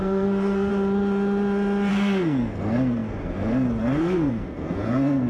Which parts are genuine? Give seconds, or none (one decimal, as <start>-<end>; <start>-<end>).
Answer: 0.7-1.9